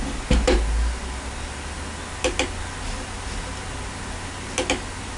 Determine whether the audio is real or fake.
real